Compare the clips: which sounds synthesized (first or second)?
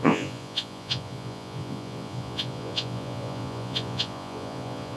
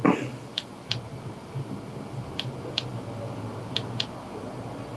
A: first